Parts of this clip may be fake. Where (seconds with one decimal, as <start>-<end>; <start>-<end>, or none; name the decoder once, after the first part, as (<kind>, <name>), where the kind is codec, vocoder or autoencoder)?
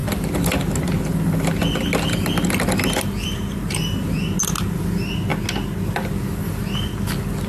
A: none